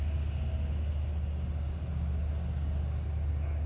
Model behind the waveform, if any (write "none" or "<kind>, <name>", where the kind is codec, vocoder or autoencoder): none